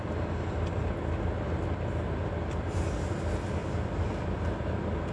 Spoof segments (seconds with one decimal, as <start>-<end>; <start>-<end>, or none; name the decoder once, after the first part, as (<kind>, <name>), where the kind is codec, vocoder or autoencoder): none